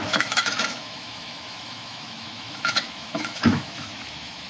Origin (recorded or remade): remade